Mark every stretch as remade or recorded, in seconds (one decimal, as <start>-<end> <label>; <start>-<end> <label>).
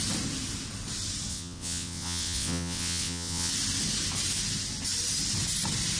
0.0-1.3 recorded; 1.3-3.5 remade; 3.5-6.0 recorded